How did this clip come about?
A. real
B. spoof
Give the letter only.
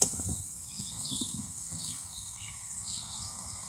B